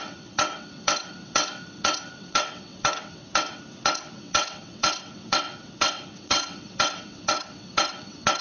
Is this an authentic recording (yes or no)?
no